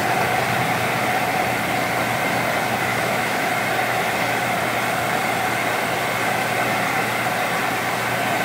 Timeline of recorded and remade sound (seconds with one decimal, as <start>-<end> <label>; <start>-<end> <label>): 0.0-2.9 recorded; 2.9-3.5 remade; 3.5-8.4 recorded